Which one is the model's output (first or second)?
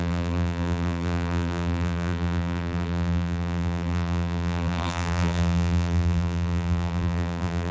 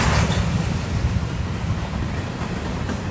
first